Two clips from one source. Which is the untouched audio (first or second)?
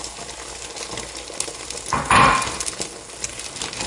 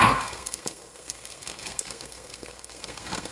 first